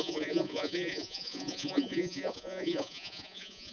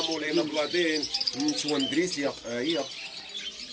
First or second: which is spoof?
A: first